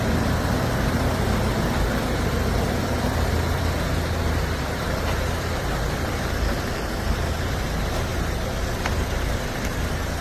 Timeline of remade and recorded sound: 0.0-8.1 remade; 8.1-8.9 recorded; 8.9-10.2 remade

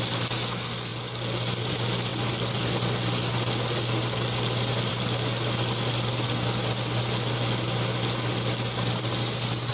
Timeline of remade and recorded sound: 0.0-9.7 recorded

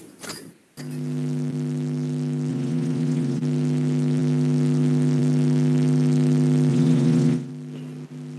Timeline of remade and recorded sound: 0.0-2.5 recorded; 2.5-3.4 remade; 3.4-6.7 recorded; 6.7-7.5 remade; 7.5-8.4 recorded

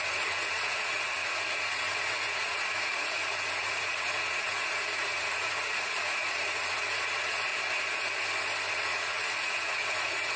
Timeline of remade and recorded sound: 0.0-7.5 remade; 7.5-8.7 recorded; 8.7-10.4 remade

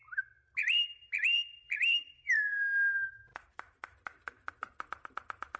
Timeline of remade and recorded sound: 0.0-5.6 recorded

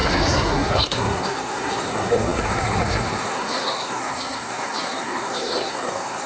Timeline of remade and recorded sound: 0.0-6.3 remade